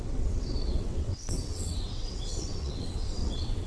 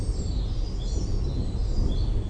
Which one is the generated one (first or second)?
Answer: first